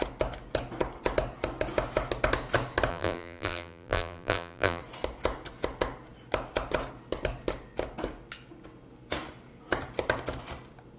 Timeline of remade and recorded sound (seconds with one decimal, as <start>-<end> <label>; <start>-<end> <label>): 0.0-2.9 recorded; 2.9-4.8 remade; 4.8-11.0 recorded